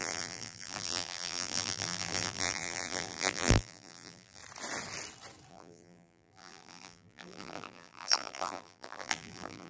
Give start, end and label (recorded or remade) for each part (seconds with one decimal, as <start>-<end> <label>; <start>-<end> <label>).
0.0-4.4 remade; 4.4-5.5 recorded; 5.5-9.7 remade